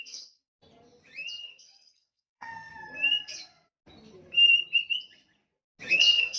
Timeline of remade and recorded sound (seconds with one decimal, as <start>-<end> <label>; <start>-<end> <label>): 0.0-0.4 remade; 0.4-1.3 recorded; 1.3-2.7 remade; 2.7-5.9 recorded; 5.9-6.4 remade